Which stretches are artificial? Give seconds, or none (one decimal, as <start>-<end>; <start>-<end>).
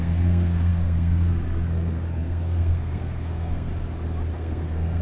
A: 0.0-3.7; 4.3-5.0